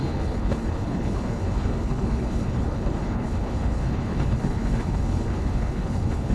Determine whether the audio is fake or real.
fake